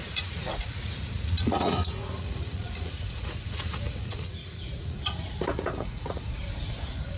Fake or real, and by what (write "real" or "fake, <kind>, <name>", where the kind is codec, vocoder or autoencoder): fake, vocoder, Vocos